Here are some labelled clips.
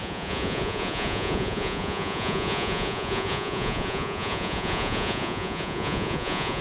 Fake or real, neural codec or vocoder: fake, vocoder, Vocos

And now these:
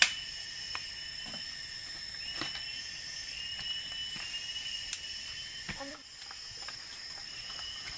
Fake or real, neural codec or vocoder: real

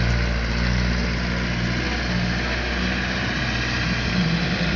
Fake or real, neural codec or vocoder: real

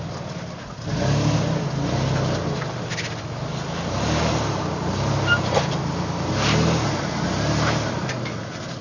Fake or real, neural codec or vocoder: real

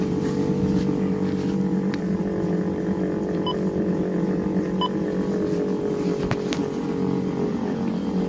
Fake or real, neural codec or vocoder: real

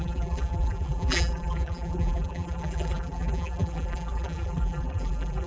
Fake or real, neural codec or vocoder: fake, vocoder, BigVGAN v2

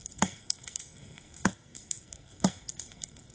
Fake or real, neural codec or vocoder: fake, codec, SNAC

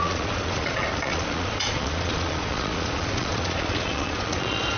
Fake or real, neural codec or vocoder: fake, vocoder, Vocos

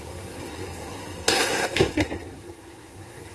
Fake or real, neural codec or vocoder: fake, codec, SNAC